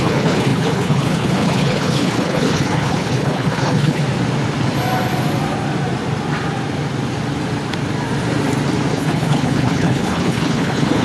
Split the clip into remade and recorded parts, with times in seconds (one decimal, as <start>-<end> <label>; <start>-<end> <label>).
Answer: 0.0-4.0 remade; 4.0-8.9 recorded; 8.9-11.0 remade